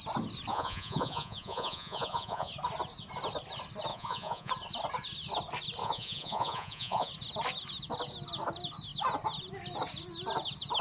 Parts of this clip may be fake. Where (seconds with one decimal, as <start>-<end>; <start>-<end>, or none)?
0.5-2.5; 3.9-4.5; 5.8-7.1